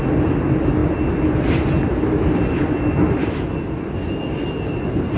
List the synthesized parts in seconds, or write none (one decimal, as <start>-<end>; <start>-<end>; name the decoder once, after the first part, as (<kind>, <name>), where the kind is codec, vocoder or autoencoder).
none